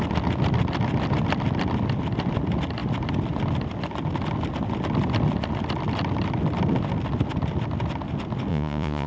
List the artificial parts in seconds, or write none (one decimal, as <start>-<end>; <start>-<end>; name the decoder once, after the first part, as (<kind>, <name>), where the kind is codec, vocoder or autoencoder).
8.5-9.1 (vocoder, Vocos)